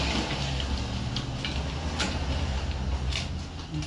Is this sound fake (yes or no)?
no